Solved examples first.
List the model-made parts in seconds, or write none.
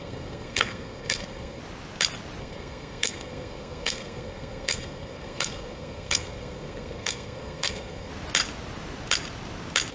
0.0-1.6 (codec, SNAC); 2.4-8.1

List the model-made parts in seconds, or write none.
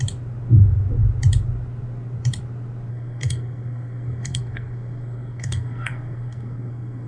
2.9-7.1 (codec, SNAC)